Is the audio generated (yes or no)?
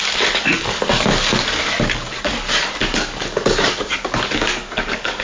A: yes